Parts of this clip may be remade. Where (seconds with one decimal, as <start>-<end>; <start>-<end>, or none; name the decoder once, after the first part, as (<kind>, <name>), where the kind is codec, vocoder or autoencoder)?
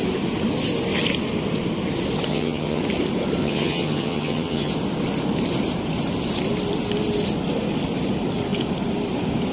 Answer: 2.3-2.8 (vocoder, HiFi-GAN); 3.4-4.7